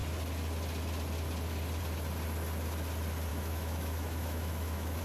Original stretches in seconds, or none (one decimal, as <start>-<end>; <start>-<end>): 0.0-3.3